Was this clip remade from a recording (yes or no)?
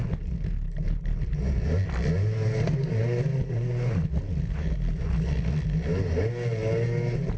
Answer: no